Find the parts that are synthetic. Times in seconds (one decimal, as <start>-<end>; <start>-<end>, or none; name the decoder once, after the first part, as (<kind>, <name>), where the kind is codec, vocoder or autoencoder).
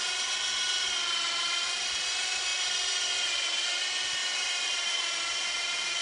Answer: none